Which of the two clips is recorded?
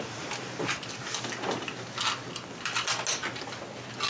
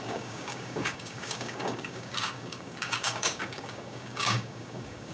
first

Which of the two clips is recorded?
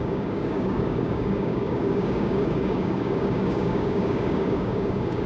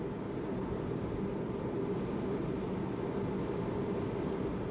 second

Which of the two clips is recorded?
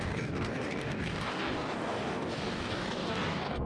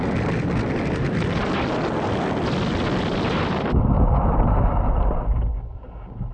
second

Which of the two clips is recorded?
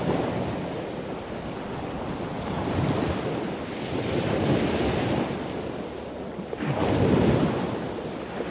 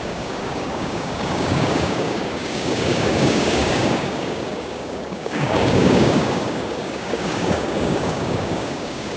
first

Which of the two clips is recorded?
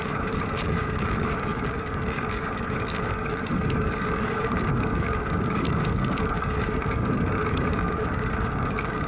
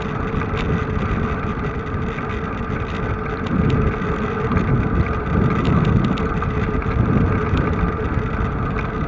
second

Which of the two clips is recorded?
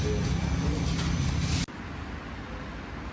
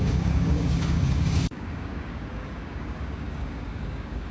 first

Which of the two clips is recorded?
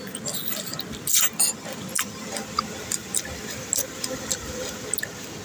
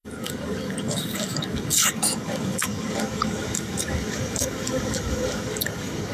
first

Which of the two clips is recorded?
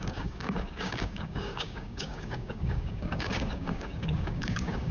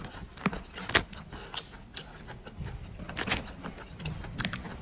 second